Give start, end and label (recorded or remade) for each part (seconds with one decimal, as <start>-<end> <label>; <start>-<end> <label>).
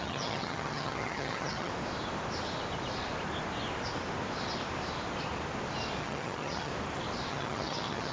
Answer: 0.0-1.7 remade; 1.7-6.0 recorded; 6.0-6.7 remade; 6.7-7.3 recorded; 7.3-8.1 remade